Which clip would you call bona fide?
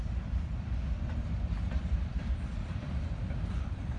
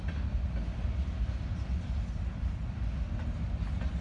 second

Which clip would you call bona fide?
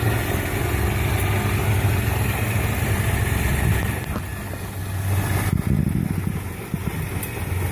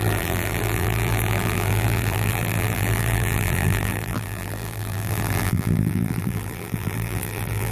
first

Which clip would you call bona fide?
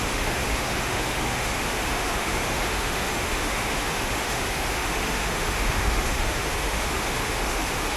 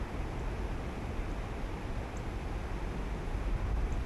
second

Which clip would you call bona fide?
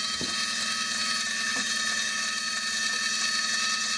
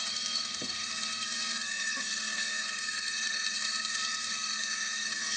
first